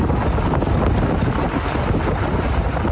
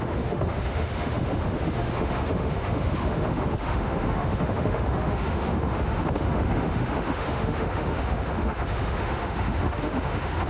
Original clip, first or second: first